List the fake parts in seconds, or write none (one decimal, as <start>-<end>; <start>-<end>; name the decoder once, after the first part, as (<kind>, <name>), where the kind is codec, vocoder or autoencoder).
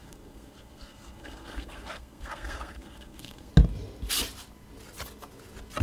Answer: 0.0-3.5 (codec, SNAC)